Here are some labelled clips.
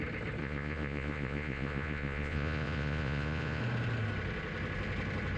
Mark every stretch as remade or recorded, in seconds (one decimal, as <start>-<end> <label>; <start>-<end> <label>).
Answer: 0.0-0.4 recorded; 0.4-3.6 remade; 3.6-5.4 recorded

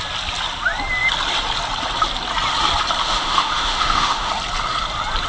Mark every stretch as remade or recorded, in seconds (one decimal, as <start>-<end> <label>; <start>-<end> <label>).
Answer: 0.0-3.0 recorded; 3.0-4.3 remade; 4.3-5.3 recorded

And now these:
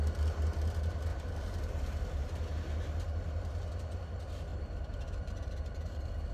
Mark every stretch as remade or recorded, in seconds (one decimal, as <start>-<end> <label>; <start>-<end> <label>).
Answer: 0.0-1.1 recorded; 1.1-2.5 remade; 2.5-4.5 recorded; 4.5-6.3 remade

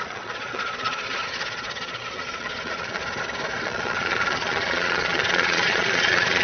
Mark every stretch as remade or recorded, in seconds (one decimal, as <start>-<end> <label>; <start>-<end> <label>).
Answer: 0.0-3.0 remade; 3.0-3.6 recorded; 3.6-6.4 remade

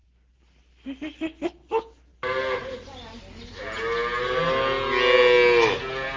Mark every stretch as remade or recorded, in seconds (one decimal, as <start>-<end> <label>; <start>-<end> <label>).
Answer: 0.0-6.2 recorded

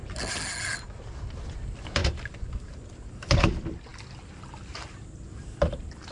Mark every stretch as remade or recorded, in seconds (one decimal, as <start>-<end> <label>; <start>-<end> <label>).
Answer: 0.0-1.0 recorded; 1.0-2.0 remade; 2.0-2.7 recorded; 2.7-3.9 remade; 3.9-4.6 recorded; 4.6-6.1 remade

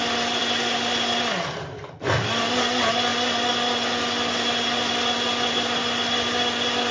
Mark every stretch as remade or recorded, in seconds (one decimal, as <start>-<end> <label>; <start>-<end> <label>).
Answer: 0.0-6.9 recorded

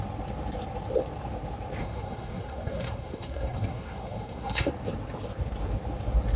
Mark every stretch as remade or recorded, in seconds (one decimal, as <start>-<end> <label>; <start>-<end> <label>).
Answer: 0.0-1.8 recorded; 1.8-4.7 remade; 4.7-6.4 recorded